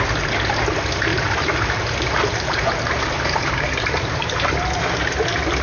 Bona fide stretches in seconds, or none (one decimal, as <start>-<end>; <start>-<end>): 0.0-1.1; 4.5-5.6